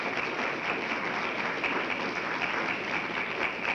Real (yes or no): yes